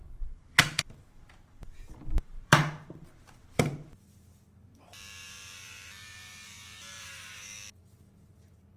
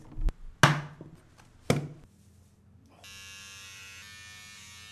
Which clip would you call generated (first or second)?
first